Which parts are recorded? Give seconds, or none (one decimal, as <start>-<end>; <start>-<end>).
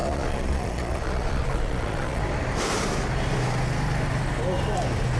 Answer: 2.2-5.2